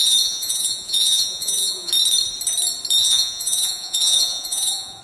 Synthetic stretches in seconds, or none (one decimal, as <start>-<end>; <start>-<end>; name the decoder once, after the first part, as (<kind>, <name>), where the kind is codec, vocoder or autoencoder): 0.0-1.9 (vocoder, Vocos); 3.0-5.0